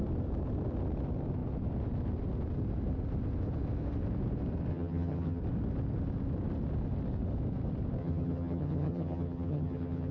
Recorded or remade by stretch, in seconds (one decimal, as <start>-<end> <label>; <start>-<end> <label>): 0.0-4.7 recorded; 4.7-5.4 remade; 5.4-8.0 recorded; 8.0-10.1 remade